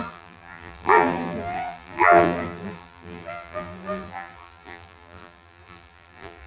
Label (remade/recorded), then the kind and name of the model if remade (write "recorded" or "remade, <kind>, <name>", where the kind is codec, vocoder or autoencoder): remade, vocoder, BigVGAN v2